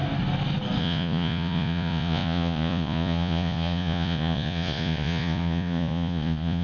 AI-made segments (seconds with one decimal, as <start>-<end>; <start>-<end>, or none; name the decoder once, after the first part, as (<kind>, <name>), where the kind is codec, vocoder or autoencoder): 0.8-6.6 (vocoder, Vocos)